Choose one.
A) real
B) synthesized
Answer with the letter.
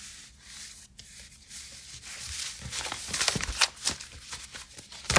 A